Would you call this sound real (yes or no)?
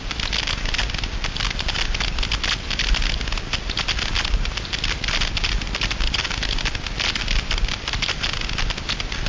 yes